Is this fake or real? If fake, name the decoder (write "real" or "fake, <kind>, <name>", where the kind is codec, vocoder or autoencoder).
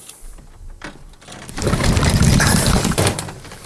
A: fake, vocoder, BigVGAN v2